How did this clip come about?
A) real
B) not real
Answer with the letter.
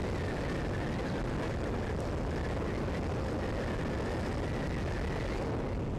A